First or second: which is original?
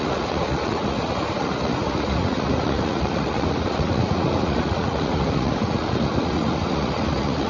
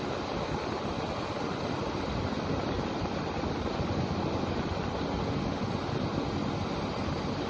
second